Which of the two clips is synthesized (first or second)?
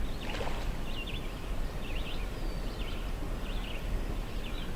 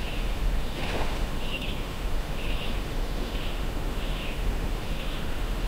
second